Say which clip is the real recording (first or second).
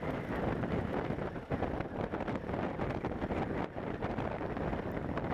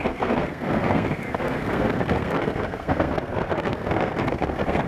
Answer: first